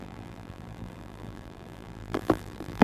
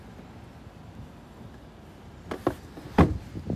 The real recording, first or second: second